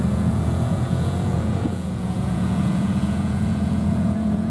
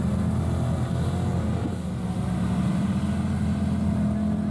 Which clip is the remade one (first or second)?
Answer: first